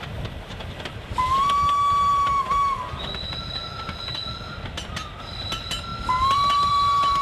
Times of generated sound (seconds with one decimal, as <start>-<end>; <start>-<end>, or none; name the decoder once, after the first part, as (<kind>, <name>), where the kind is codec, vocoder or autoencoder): none